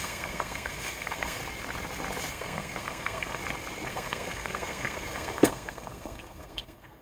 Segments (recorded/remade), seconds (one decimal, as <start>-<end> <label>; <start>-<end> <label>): 0.0-1.4 remade; 1.4-2.3 recorded; 2.3-3.4 remade; 3.4-3.9 recorded; 3.9-7.0 remade